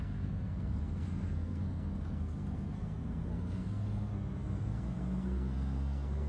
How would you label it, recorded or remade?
remade